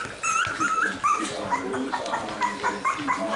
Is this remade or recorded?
recorded